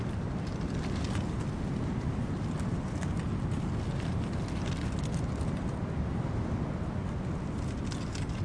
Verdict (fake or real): real